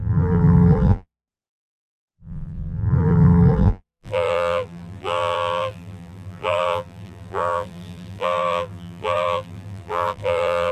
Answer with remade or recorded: remade